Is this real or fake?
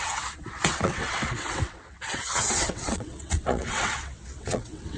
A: fake